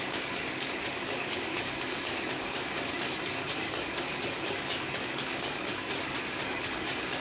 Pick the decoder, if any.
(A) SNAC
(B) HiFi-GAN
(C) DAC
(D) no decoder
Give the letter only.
C